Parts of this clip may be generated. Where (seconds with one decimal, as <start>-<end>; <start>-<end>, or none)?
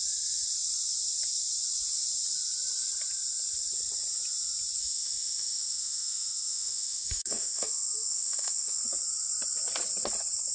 4.8-8.8